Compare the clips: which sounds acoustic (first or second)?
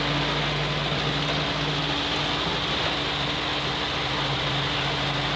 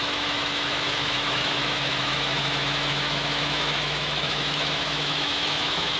first